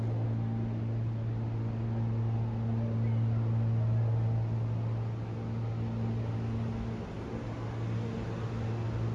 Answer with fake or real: real